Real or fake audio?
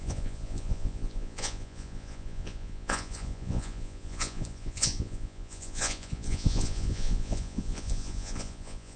fake